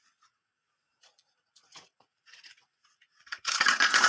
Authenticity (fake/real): fake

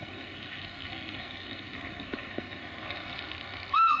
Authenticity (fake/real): fake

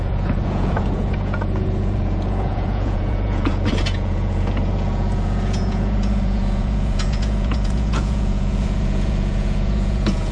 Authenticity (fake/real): fake